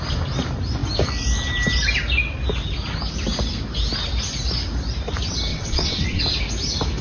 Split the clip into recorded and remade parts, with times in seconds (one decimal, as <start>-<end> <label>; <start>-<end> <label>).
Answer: 0.0-5.5 recorded; 5.5-6.2 remade; 6.2-7.0 recorded